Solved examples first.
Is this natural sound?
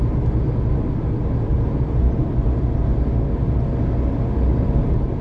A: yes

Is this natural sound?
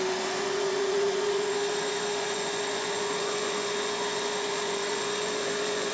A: no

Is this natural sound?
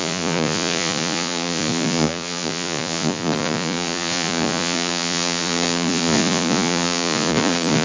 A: no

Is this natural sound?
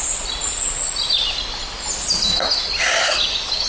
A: yes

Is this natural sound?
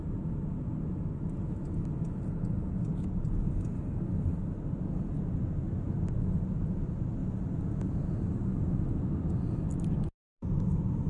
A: yes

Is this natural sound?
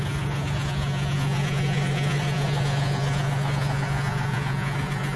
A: no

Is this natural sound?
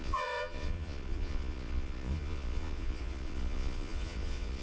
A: no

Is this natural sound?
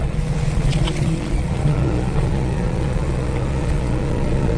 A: no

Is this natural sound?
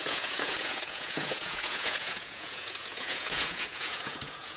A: no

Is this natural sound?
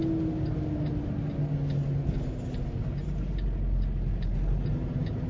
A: yes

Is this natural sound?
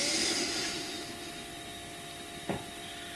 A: yes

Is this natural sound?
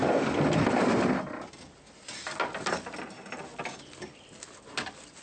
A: yes